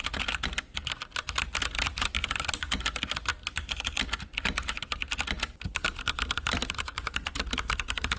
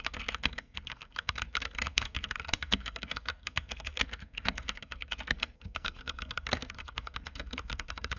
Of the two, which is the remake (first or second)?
second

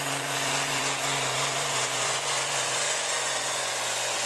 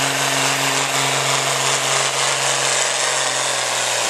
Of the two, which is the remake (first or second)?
first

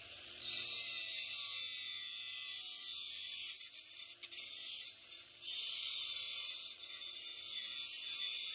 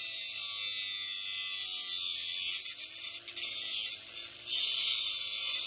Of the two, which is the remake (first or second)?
first